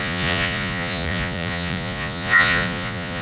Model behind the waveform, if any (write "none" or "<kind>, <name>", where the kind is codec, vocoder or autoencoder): vocoder, Vocos